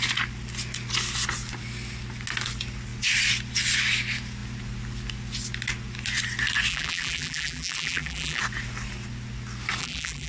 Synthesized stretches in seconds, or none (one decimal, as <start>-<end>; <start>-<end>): 6.7-8.4; 9.8-10.3